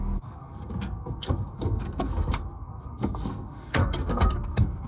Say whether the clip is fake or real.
fake